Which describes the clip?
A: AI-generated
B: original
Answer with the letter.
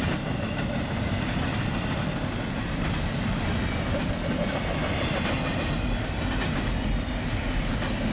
B